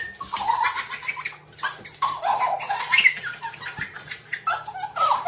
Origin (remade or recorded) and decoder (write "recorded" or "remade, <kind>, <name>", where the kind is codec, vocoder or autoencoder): recorded